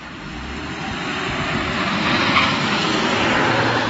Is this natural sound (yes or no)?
yes